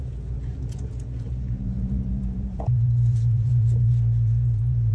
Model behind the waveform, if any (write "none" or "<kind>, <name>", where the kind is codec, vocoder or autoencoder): vocoder, Vocos